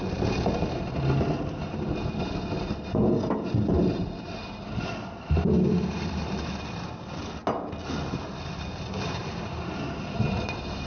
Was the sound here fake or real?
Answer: real